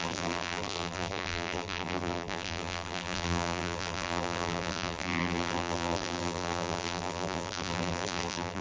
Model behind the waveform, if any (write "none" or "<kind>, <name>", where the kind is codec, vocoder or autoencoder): vocoder, BigVGAN v2